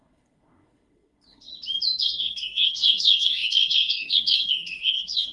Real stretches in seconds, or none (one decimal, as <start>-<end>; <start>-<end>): 1.5-2.0